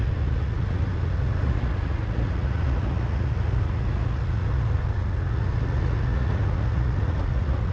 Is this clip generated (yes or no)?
yes